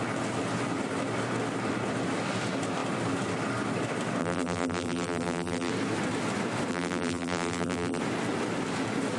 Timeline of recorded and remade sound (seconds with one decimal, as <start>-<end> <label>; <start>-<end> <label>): 0.0-4.2 recorded; 4.2-5.7 remade; 5.7-6.7 recorded; 6.7-8.0 remade; 8.0-9.2 recorded